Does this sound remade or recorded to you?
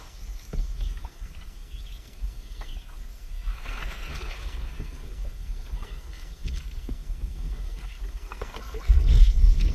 remade